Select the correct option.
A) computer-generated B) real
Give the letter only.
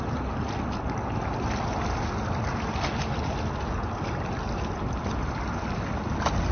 B